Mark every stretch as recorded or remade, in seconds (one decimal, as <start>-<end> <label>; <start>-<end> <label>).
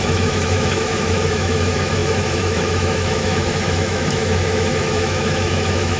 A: 0.0-6.0 remade